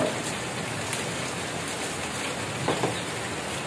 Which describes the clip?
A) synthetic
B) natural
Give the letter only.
B